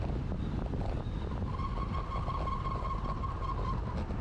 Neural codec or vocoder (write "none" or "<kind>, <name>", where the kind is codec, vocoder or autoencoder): none